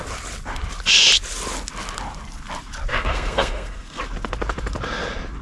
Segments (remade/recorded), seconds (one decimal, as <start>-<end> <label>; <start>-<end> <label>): 0.0-2.9 recorded; 2.9-4.0 remade; 4.0-5.4 recorded

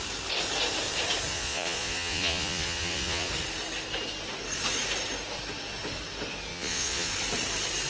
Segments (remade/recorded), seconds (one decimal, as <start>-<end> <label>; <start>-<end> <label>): 0.0-1.3 recorded; 1.3-3.3 remade; 3.3-6.5 recorded; 6.5-7.1 remade; 7.1-7.9 recorded